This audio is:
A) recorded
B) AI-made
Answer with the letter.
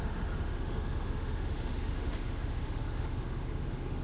B